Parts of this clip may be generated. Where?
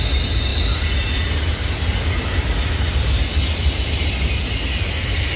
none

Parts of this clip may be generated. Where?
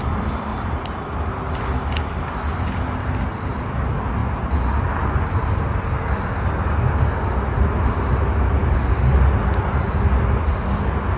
0.5-1.0 (vocoder, BigVGAN v2); 4.2-4.8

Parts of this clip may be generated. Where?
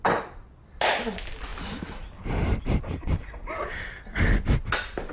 1.5-4.6 (vocoder, BigVGAN v2)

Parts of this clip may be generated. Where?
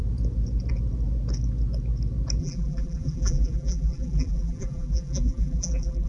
2.4-6.1 (vocoder, BigVGAN v2)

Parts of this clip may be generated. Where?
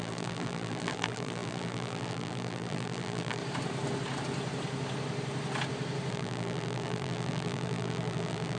0.0-3.4 (vocoder, BigVGAN v2); 6.1-8.6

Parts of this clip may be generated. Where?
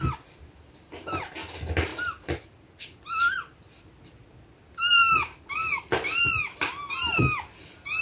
none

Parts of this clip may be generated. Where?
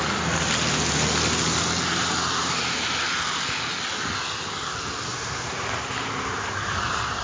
2.4-3.0 (vocoder, BigVGAN v2); 5.1-7.2